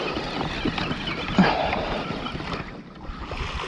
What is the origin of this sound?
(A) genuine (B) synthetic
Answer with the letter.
A